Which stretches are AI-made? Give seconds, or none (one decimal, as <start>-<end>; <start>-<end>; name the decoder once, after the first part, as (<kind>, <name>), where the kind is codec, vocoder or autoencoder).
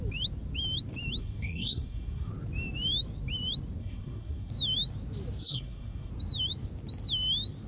1.2-2.3 (codec, SNAC); 3.8-4.5; 5.4-6.1